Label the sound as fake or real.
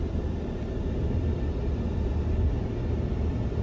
real